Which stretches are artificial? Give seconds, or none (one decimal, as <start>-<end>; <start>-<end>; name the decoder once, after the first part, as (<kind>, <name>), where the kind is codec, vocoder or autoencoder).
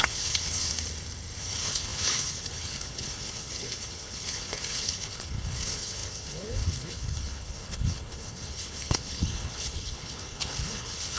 0.0-0.7 (codec, HILCodec); 1.4-11.2